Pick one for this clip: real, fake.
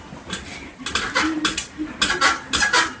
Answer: real